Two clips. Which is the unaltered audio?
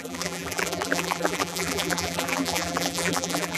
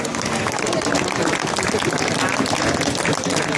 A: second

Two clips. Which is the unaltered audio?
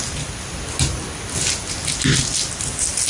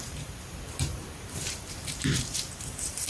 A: first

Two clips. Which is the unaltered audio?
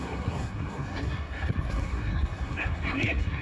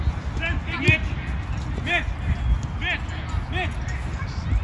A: second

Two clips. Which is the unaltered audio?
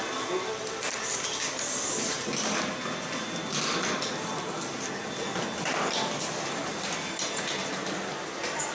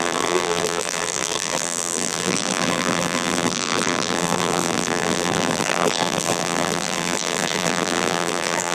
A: first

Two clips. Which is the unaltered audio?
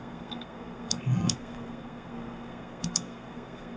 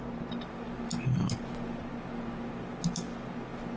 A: second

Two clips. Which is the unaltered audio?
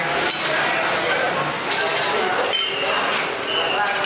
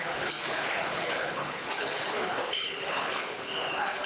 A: first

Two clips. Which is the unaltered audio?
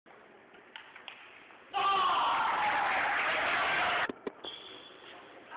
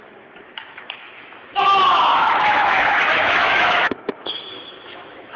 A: first